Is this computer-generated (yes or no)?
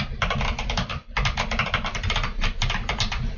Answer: no